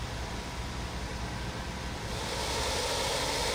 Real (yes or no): no